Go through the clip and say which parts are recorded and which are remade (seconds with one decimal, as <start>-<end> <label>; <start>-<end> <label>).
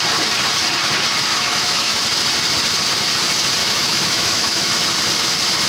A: 0.0-1.3 recorded; 1.3-2.0 remade; 2.0-3.6 recorded; 3.6-4.7 remade; 4.7-5.7 recorded